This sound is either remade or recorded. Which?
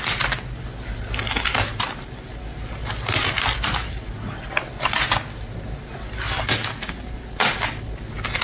recorded